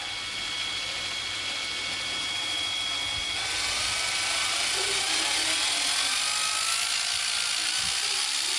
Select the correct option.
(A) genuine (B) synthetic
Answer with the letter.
A